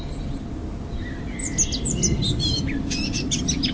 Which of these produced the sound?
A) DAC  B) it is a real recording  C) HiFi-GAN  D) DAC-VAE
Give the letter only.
B